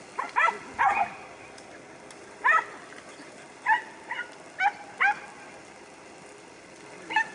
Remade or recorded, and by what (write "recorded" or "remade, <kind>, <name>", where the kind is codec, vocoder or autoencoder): recorded